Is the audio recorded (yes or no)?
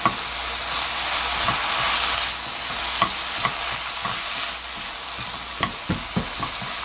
yes